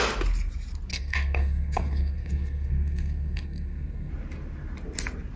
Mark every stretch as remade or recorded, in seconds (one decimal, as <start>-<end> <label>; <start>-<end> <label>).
0.0-0.9 recorded; 0.9-4.1 remade; 4.1-5.4 recorded